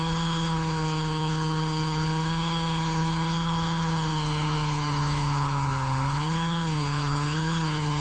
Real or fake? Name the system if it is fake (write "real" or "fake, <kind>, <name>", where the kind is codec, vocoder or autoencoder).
fake, codec, HILCodec